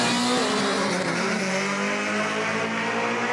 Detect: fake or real real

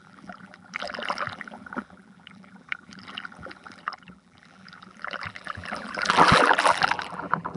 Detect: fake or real fake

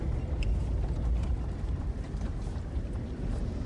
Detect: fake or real fake